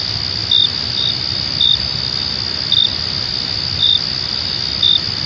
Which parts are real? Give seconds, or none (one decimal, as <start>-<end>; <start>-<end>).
0.0-5.3

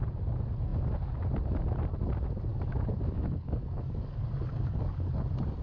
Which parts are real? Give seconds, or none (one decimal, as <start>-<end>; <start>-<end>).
0.0-2.5; 5.1-5.6